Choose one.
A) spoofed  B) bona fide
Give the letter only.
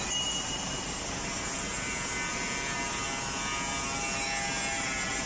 B